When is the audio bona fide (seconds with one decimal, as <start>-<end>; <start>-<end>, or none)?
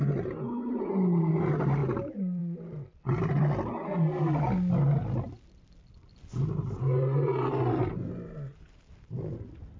0.0-9.8